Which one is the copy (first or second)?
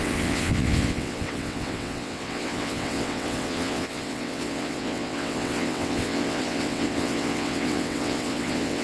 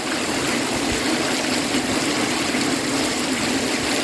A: first